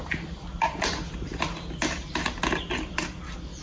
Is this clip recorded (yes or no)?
yes